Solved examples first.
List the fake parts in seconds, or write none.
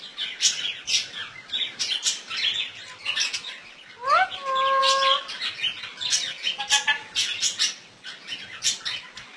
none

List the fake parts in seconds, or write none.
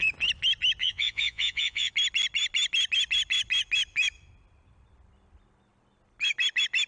0.8-1.9 (vocoder, Vocos)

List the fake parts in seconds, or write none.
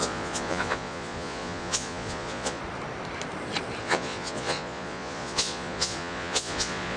0.0-2.6 (vocoder, Vocos); 3.8-7.0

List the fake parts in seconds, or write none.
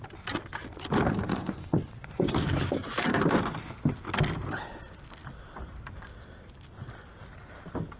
1.3-2.3 (vocoder, Vocos)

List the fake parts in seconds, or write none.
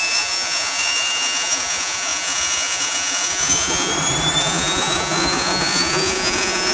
0.0-3.9 (vocoder, Vocos); 4.4-6.7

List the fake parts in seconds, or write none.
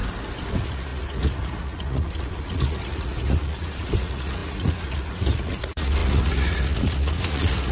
0.5-7.7 (vocoder, Vocos)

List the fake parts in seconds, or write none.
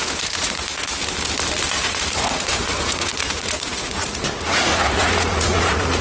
0.0-1.0 (vocoder, Vocos); 1.7-6.0